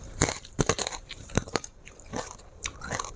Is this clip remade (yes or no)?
yes